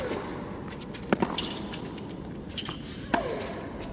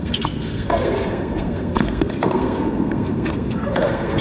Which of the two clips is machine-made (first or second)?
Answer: second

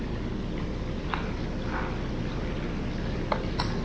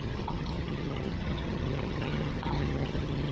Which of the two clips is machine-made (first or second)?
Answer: second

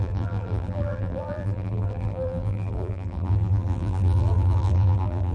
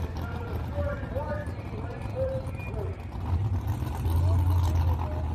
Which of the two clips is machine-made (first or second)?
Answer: first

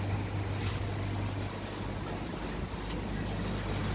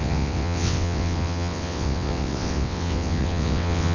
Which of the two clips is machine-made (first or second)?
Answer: second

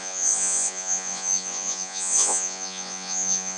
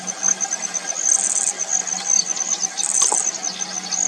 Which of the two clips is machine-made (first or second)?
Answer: first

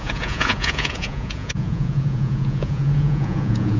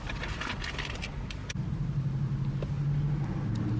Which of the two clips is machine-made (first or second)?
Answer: first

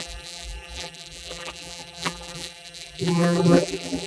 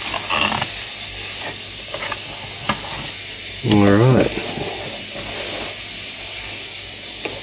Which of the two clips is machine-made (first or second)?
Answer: first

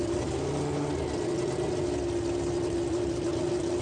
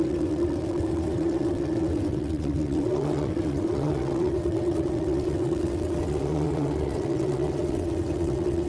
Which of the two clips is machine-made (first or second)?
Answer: second